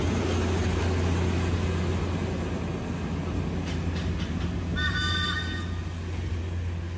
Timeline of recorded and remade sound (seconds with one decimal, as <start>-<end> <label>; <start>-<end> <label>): 0.0-7.0 recorded